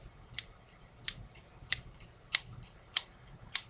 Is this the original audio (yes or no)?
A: no